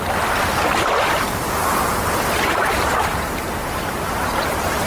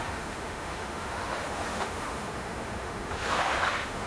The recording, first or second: first